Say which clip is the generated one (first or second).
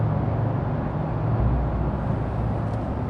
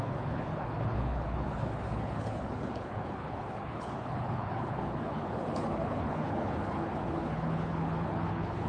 second